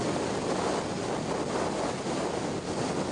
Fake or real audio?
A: real